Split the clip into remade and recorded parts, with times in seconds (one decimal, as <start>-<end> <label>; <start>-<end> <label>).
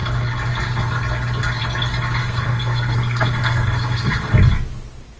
0.0-2.2 recorded; 2.2-4.3 remade; 4.3-5.2 recorded